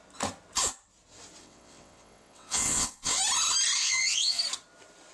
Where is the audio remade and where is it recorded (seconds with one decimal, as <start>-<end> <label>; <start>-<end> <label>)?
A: 0.0-1.4 recorded; 1.4-3.2 remade; 3.2-3.8 recorded; 3.8-4.4 remade; 4.4-5.1 recorded